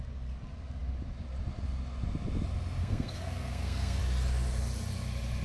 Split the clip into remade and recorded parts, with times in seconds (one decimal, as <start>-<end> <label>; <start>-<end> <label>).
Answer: 0.0-2.8 recorded; 2.8-4.0 remade; 4.0-5.4 recorded